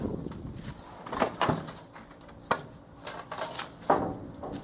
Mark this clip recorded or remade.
recorded